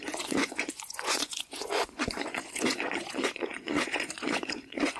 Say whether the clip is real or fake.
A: fake